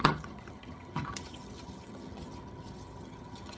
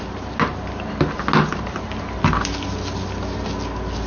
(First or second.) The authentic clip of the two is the second